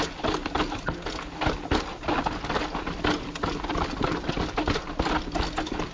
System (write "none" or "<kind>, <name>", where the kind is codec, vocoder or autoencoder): none